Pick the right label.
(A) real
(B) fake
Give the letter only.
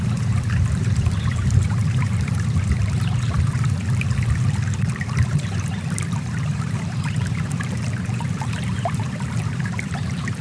B